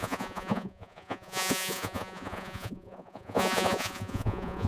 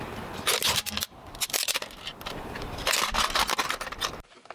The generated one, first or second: first